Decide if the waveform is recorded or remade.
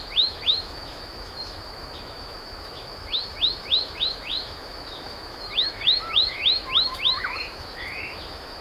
remade